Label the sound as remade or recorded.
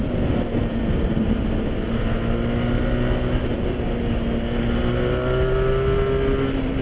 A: recorded